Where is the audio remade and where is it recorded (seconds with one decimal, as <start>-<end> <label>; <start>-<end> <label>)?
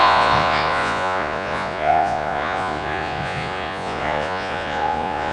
0.0-5.3 remade